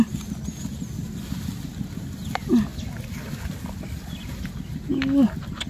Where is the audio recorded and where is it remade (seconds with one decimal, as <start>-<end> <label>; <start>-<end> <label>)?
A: 0.0-5.7 recorded